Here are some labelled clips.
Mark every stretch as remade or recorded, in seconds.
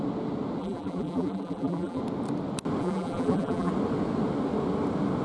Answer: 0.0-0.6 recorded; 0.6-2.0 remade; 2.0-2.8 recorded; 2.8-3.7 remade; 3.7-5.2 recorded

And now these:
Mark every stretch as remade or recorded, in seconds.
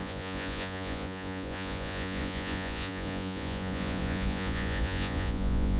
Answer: 0.0-5.8 remade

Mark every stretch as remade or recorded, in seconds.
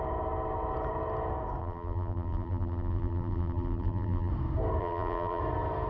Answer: 0.0-1.6 recorded; 1.6-4.3 remade; 4.3-4.8 recorded; 4.8-5.4 remade; 5.4-5.9 recorded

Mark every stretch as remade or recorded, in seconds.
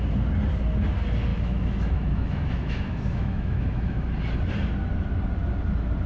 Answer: 0.0-1.3 recorded; 1.3-4.1 remade; 4.1-6.1 recorded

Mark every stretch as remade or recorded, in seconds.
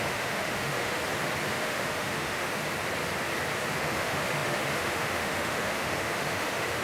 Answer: 0.0-1.0 remade; 1.0-1.5 recorded; 1.5-2.6 remade; 2.6-3.8 recorded; 3.8-6.8 remade